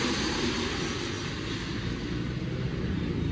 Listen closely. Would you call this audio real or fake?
real